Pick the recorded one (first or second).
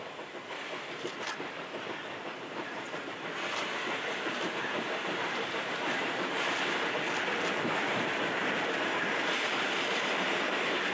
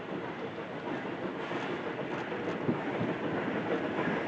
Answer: second